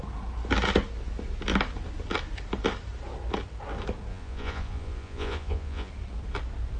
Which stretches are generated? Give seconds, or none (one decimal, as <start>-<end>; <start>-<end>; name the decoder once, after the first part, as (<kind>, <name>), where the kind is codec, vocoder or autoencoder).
4.1-5.9 (vocoder, Vocos)